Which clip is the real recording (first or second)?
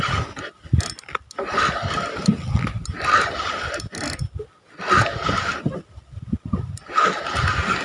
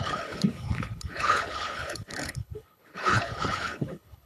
first